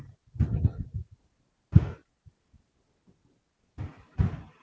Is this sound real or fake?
real